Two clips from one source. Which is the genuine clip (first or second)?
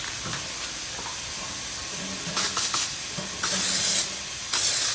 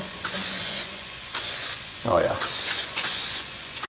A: first